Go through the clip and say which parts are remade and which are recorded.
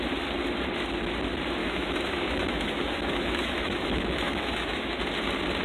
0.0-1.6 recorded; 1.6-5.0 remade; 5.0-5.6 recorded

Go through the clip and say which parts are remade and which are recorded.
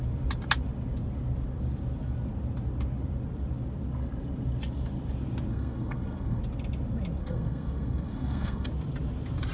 0.0-5.5 recorded; 5.5-6.4 remade; 6.4-7.2 recorded; 7.2-8.7 remade; 8.7-9.5 recorded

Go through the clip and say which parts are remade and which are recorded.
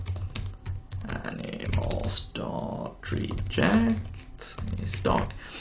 0.0-0.6 recorded; 0.6-1.2 remade; 1.2-5.6 recorded